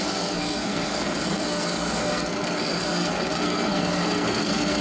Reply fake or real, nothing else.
fake